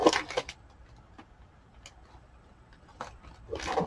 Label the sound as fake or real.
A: real